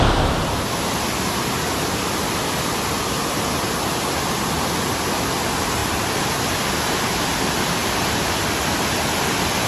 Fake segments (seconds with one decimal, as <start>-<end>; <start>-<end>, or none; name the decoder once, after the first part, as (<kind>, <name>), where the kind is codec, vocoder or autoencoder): 5.8-6.3 (vocoder, BigVGAN v2); 7.8-8.3